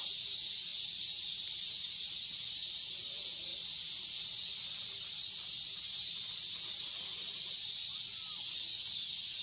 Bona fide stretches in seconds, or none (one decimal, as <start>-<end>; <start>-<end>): 0.0-3.5; 7.7-9.4